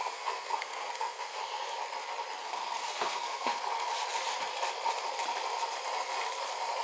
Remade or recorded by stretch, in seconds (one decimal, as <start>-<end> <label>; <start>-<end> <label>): 0.0-1.4 remade; 1.4-2.4 recorded; 2.4-3.6 remade; 3.6-6.8 recorded